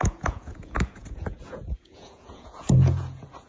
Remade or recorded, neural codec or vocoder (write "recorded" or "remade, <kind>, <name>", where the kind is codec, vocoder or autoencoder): remade, vocoder, Vocos